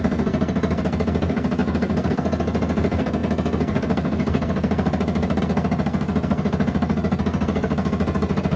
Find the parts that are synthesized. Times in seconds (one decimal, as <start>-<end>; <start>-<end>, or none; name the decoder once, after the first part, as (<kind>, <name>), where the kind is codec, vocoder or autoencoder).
0.0-8.6 (codec, SNAC)